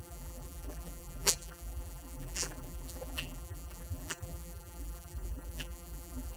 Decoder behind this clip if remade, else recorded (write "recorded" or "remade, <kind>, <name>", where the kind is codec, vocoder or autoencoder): remade, vocoder, BigVGAN v2